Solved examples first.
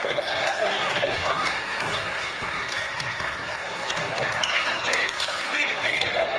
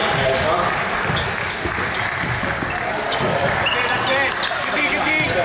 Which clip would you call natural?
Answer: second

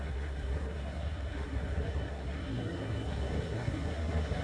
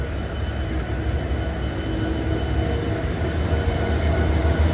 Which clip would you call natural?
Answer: second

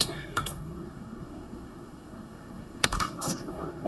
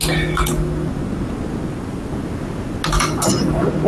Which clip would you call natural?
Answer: second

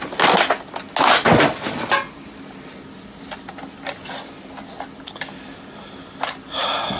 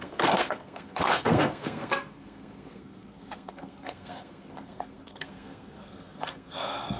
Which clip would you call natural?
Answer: first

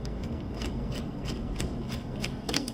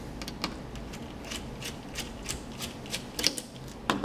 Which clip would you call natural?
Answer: second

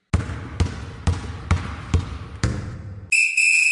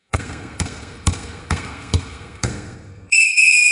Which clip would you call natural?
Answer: first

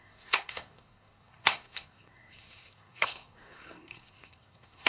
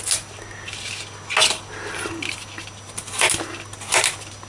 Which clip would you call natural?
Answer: second